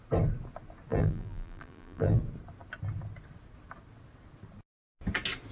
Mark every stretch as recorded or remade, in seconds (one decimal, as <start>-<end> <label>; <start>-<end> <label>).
0.0-0.9 recorded; 0.9-2.2 remade; 2.2-5.5 recorded